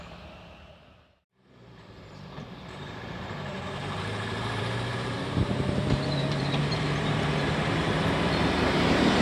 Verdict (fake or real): fake